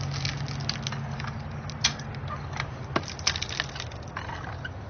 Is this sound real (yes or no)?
yes